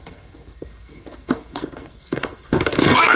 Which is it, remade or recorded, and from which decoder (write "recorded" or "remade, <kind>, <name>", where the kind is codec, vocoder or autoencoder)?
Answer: remade, codec, SNAC